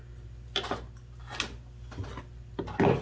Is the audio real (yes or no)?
yes